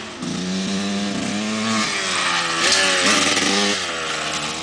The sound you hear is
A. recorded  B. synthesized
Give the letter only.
A